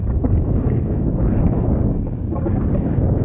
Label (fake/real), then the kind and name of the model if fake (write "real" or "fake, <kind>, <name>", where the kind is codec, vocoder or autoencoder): fake, codec, DAC